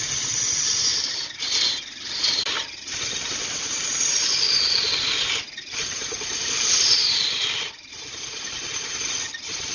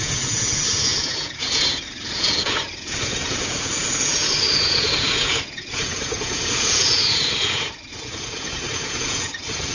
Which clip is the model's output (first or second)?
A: second